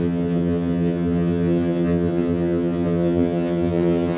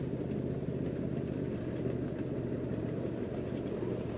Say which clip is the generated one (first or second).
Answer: first